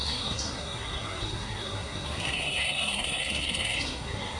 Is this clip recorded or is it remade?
remade